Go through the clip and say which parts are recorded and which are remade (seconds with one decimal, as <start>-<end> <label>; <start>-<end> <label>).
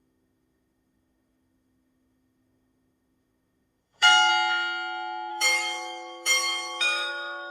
0.0-4.3 remade; 4.3-5.3 recorded; 5.3-7.5 remade